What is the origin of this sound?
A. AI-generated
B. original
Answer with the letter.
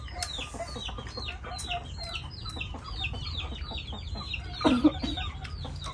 B